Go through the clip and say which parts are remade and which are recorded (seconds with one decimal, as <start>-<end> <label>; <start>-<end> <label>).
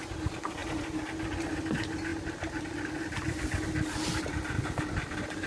0.0-5.5 recorded